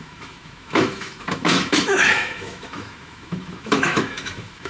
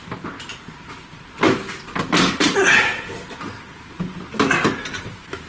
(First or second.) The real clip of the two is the second